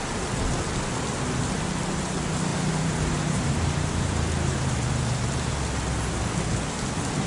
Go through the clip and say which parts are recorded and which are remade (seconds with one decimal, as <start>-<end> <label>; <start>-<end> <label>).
0.0-2.5 recorded; 2.5-5.5 remade; 5.5-7.3 recorded